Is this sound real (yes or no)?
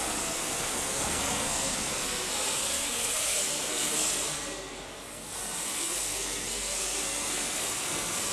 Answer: no